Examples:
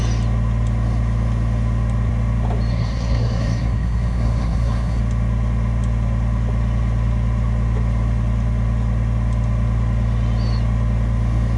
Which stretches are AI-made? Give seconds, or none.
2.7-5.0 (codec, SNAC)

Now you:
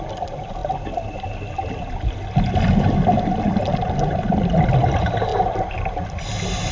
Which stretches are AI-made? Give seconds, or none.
none

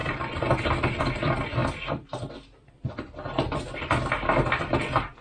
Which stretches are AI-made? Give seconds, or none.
none